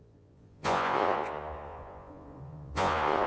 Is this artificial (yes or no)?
yes